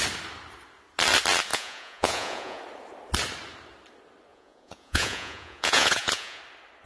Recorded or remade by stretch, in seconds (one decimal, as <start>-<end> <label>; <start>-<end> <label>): 0.0-1.5 recorded; 1.5-2.6 remade; 2.6-4.3 recorded; 4.3-6.4 remade; 6.4-6.9 recorded